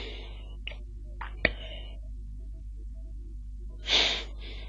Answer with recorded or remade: recorded